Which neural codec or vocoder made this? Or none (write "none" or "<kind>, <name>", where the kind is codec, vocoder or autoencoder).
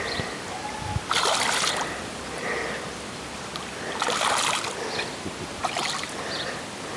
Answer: none